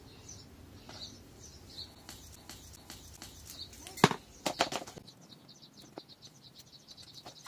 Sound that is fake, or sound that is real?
real